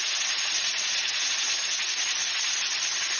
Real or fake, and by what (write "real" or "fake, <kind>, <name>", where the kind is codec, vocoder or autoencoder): real